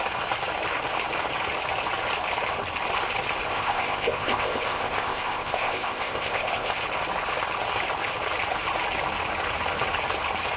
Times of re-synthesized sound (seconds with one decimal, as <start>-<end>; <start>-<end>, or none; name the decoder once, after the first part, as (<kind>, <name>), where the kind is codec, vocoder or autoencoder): 3.5-6.8 (codec, ZipCodec)

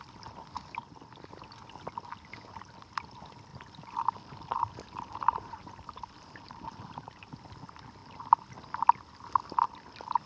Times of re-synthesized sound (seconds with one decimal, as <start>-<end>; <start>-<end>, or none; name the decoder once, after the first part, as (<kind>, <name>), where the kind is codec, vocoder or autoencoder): 3.5-7.3 (vocoder, BigVGAN v2)

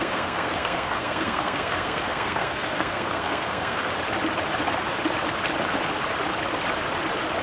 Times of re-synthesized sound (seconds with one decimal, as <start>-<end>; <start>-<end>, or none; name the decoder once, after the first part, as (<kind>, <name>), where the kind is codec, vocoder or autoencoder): 0.0-3.9 (codec, SNAC)

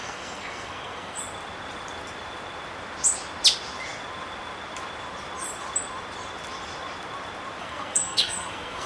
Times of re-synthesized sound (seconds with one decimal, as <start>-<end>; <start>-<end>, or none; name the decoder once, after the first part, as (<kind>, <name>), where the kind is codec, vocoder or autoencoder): 0.0-1.2 (codec, SNAC); 7.6-8.9